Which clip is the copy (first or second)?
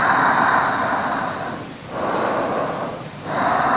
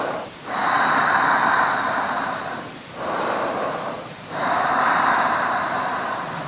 second